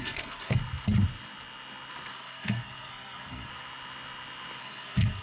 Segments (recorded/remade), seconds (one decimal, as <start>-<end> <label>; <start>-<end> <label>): 0.0-0.6 remade; 0.6-2.1 recorded; 2.1-3.5 remade; 3.5-4.6 recorded; 4.6-5.2 remade